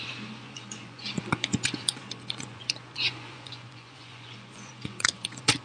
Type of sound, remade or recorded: remade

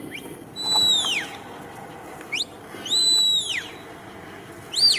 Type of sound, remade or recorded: recorded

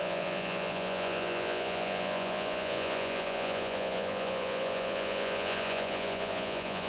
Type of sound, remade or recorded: remade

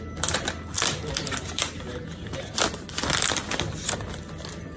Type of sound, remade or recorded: recorded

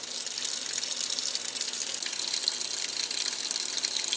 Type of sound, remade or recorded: recorded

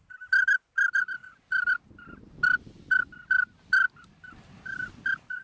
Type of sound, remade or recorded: recorded